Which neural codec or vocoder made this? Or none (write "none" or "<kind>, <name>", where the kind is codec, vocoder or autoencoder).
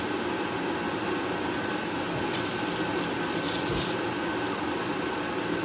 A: none